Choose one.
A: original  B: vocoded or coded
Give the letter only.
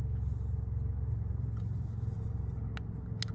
A